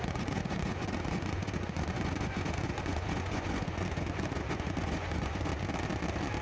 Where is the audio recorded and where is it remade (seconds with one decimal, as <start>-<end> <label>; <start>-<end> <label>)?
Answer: 0.0-5.5 remade; 5.5-6.4 recorded